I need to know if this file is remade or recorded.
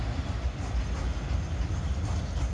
recorded